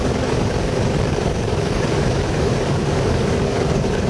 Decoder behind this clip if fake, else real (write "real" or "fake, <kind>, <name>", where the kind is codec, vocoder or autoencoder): fake, codec, DAC